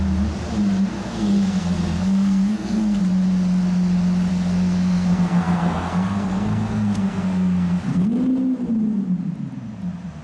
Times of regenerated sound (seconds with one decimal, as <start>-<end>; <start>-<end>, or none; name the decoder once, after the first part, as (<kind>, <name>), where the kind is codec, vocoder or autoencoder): 0.9-3.0 (codec, SNAC); 4.3-8.1